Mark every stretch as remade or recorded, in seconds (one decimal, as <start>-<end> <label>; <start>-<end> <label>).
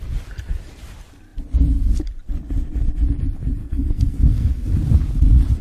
0.0-3.6 recorded; 3.6-4.7 remade; 4.7-5.6 recorded